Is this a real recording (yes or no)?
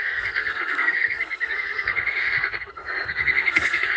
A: no